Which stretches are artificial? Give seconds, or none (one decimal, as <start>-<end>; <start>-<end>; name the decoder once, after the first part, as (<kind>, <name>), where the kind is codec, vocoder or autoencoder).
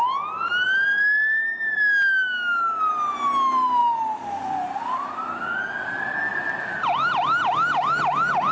3.8-4.8 (vocoder, BigVGAN v2); 6.3-7.1